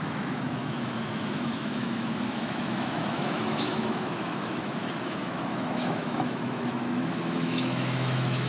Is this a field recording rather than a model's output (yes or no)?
no